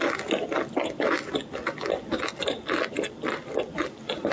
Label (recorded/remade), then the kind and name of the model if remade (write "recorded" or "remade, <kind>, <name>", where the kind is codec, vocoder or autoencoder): recorded